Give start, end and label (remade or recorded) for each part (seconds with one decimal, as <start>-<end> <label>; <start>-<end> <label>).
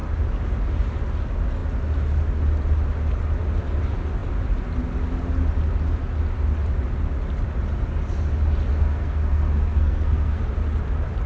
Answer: 0.0-8.7 recorded; 8.7-10.4 remade; 10.4-11.3 recorded